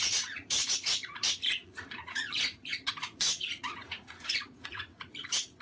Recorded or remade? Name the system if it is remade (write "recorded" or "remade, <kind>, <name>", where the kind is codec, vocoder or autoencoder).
remade, vocoder, Vocos